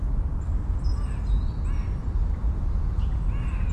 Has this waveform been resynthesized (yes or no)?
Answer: no